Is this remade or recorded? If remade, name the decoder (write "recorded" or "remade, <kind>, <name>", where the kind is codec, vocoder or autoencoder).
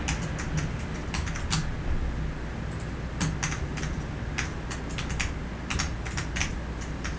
recorded